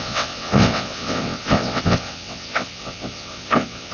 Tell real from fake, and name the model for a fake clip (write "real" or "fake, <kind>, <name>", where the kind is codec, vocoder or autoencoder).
fake, vocoder, WaveNeXt